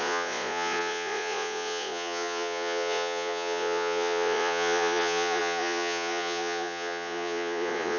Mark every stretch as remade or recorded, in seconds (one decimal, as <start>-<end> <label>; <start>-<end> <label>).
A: 0.0-8.0 remade